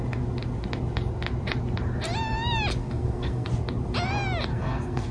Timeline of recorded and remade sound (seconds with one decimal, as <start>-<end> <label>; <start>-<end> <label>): 0.0-2.8 recorded; 2.8-3.5 remade; 3.5-4.5 recorded; 4.5-5.1 remade

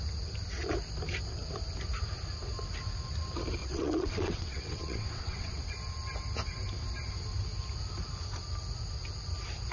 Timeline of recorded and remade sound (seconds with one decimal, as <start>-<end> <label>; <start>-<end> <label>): 0.0-3.6 recorded; 3.6-5.6 remade; 5.6-9.7 recorded

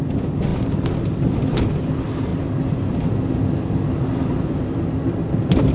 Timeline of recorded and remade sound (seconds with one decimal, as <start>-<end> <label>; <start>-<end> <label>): 0.0-5.7 recorded

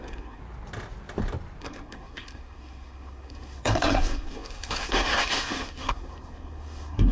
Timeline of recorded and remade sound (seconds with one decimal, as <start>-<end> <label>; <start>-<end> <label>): 0.0-0.4 remade; 0.4-1.6 recorded; 1.6-7.1 remade